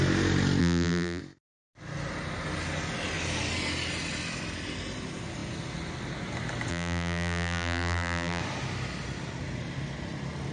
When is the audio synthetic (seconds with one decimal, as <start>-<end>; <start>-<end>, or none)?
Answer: 0.6-1.2; 6.7-8.4